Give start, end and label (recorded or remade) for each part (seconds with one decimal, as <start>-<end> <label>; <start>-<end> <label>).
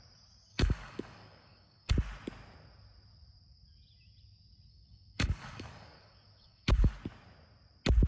0.0-0.5 recorded; 0.5-1.9 remade; 1.9-4.7 recorded; 4.7-6.9 remade; 6.9-8.1 recorded